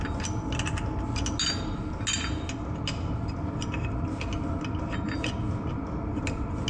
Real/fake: real